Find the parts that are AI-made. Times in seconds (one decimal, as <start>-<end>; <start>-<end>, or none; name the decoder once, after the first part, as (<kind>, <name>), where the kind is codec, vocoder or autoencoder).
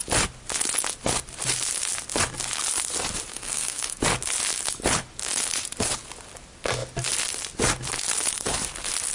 3.3-4.0 (codec, SNAC)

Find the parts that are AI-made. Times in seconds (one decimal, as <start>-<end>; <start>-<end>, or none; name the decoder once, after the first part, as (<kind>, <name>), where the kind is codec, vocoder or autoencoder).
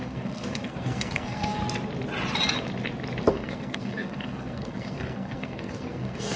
0.0-1.6 (codec, SNAC); 3.3-6.4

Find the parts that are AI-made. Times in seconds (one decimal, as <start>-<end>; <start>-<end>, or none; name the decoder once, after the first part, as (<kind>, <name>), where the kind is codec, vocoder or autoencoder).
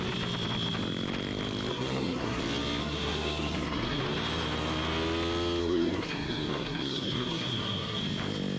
1.7-2.4 (codec, SNAC); 2.8-4.0; 5.6-8.0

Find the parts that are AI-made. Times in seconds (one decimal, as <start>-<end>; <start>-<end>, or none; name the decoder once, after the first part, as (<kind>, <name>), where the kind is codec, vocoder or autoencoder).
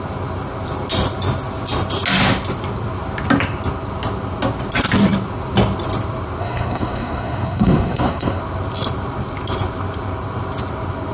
6.4-8.4 (codec, SNAC)